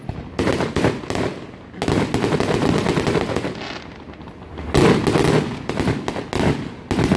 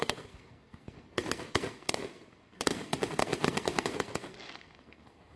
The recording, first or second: first